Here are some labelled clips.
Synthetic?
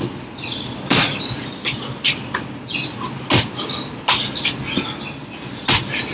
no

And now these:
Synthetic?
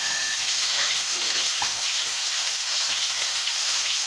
yes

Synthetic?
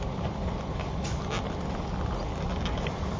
no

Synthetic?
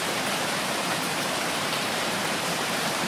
yes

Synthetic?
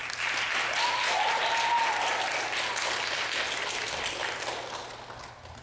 no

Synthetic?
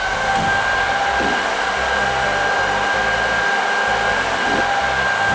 no